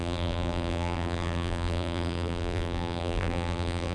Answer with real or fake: fake